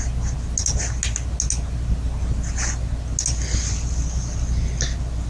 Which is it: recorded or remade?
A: recorded